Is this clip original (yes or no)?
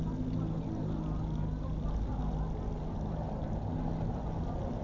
yes